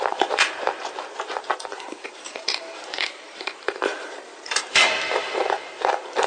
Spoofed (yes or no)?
yes